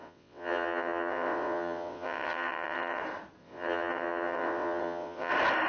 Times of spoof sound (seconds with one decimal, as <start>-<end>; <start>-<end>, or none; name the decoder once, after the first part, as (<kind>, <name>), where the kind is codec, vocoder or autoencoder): 0.0-3.0 (vocoder, WaveNeXt); 3.4-5.3